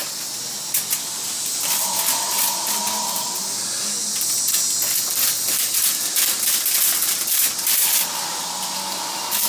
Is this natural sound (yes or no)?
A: yes